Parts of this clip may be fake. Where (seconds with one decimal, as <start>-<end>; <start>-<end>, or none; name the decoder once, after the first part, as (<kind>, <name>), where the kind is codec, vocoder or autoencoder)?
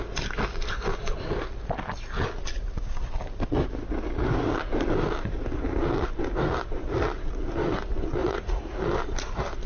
8.2-8.8 (vocoder, Vocos)